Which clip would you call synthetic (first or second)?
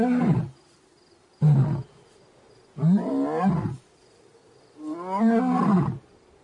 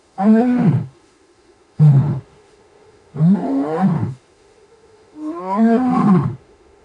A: second